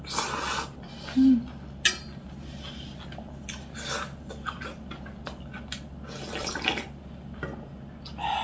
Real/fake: real